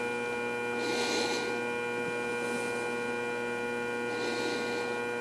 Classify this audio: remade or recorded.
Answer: recorded